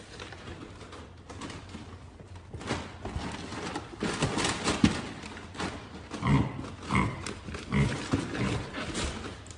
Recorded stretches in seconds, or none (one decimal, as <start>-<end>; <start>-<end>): 0.0-9.6